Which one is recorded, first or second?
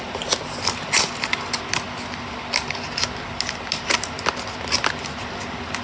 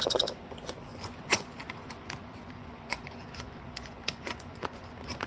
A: first